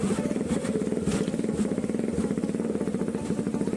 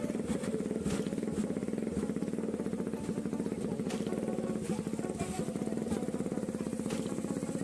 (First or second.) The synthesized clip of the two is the first